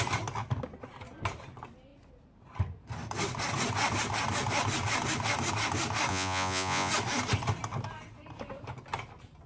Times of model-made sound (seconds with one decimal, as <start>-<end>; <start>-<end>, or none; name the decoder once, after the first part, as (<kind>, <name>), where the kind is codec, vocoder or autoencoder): 6.1-6.9 (vocoder, Vocos)